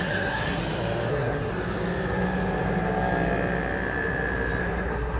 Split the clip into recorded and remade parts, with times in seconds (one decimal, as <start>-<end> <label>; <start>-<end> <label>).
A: 0.0-0.6 remade; 0.6-1.1 recorded; 1.1-1.5 remade; 1.5-4.6 recorded; 4.6-5.2 remade